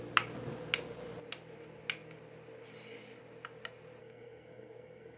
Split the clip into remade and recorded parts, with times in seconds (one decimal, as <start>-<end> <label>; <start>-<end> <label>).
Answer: 0.0-4.0 recorded; 4.0-5.2 remade